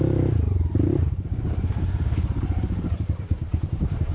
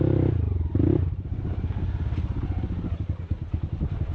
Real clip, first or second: second